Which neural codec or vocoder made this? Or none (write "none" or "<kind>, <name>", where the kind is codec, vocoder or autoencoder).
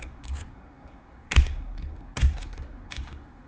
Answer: codec, SNAC